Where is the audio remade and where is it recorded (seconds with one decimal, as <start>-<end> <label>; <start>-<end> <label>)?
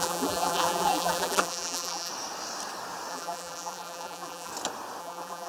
0.0-2.1 remade; 2.1-3.1 recorded; 3.1-4.5 remade; 4.5-5.0 recorded; 5.0-5.5 remade